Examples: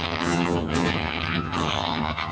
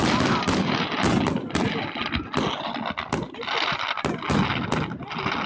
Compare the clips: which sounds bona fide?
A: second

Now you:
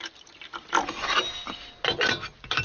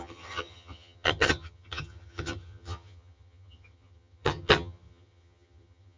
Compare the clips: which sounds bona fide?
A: first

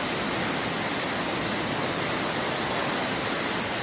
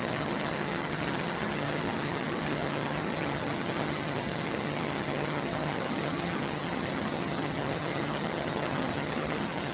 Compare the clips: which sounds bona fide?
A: first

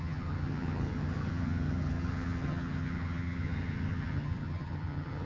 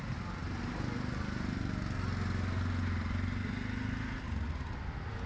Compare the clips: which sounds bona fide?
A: second